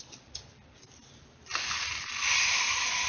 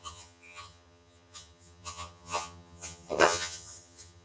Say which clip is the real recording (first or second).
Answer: first